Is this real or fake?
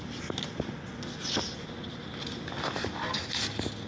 real